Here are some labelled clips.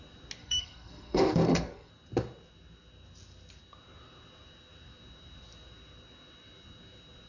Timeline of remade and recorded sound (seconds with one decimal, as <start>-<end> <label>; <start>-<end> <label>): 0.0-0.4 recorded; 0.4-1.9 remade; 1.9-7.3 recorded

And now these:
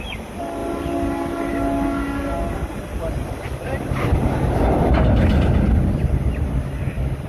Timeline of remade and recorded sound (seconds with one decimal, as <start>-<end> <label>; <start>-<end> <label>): 0.0-0.6 remade; 0.6-5.0 recorded; 5.0-7.3 remade

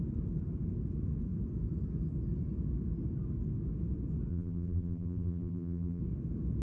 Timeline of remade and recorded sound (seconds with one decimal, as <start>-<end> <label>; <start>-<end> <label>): 0.0-4.3 recorded; 4.3-6.0 remade; 6.0-6.6 recorded